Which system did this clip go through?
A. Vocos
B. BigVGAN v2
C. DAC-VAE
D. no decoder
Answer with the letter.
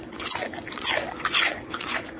A